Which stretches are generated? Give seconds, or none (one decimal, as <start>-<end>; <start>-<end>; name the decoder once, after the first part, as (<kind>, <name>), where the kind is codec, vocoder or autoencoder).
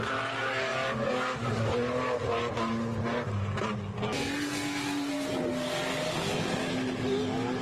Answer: 0.4-1.5 (codec, DAC)